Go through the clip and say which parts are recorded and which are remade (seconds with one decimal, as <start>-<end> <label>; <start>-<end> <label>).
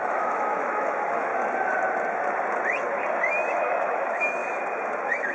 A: 0.0-1.3 remade; 1.3-3.5 recorded; 3.5-4.4 remade; 4.4-5.3 recorded